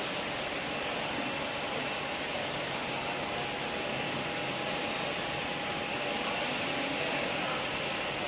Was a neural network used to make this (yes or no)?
no